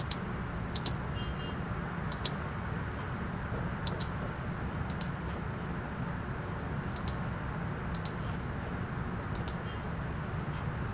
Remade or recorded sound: recorded